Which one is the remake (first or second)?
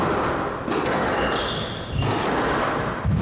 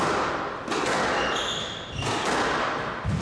first